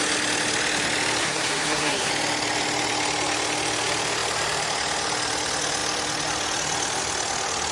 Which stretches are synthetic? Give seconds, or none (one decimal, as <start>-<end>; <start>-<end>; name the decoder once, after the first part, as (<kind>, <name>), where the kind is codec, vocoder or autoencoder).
1.2-2.1 (codec, SNAC)